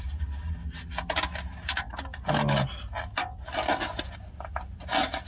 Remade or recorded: recorded